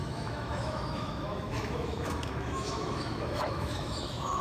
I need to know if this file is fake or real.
fake